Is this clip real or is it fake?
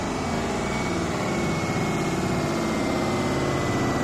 real